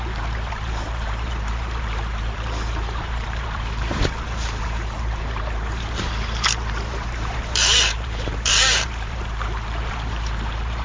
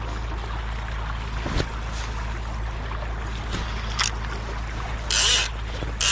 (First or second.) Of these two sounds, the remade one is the first